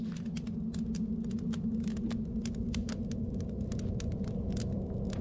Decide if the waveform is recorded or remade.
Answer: recorded